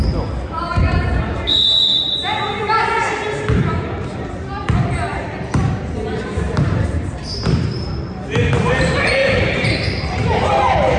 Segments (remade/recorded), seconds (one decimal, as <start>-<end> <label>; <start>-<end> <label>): 0.0-5.1 recorded; 5.1-7.9 remade; 7.9-9.2 recorded; 9.2-10.5 remade; 10.5-11.0 recorded